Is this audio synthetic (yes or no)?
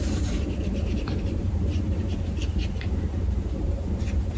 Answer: yes